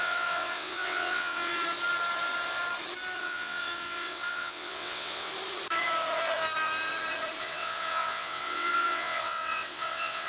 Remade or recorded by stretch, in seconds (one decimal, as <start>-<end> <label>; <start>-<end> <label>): 0.0-1.5 remade; 1.5-3.2 recorded; 3.2-5.3 remade; 5.3-7.4 recorded; 7.4-10.3 remade